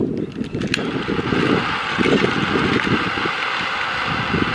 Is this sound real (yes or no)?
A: yes